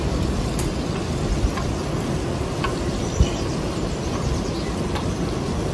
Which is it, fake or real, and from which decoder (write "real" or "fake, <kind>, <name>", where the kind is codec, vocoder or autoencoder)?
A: real